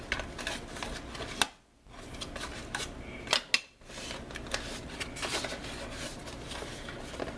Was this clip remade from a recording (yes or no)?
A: no